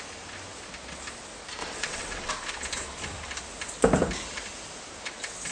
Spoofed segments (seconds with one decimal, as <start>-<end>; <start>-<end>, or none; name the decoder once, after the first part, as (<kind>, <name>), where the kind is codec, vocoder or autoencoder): 1.6-2.3 (vocoder, WaveNeXt)

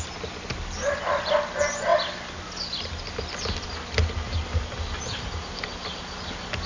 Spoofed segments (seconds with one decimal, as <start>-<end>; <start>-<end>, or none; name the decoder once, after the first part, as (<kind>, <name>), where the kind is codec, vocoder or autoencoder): none